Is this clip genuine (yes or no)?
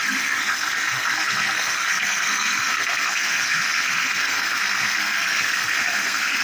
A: no